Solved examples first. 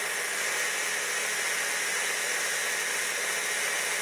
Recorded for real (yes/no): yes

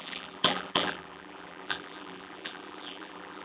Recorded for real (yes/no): no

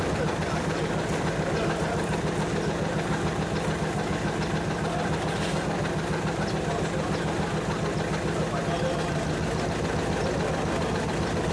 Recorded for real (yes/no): yes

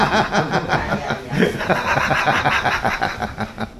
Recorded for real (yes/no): yes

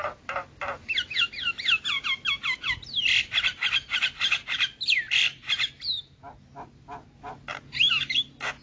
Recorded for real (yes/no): yes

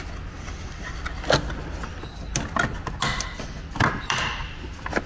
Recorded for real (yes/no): yes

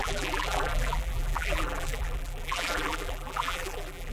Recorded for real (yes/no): no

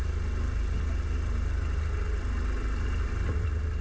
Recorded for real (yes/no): yes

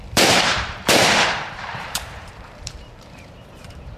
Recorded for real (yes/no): no